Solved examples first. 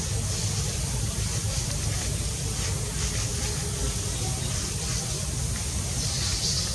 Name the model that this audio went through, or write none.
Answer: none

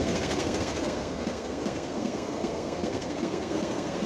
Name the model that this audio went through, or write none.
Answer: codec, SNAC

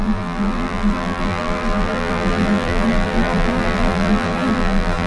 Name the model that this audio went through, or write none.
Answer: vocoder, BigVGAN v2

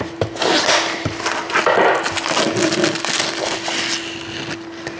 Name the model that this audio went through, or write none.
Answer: none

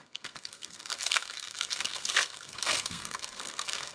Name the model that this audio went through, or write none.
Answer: codec, SNAC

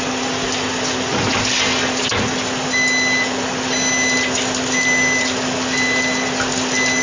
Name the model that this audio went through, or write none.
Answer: none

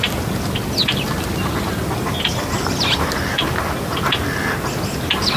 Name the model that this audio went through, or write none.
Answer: none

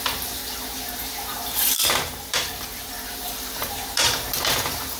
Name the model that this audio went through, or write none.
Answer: vocoder, BigVGAN v2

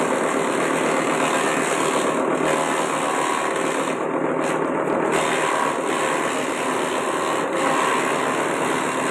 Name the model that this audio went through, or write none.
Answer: none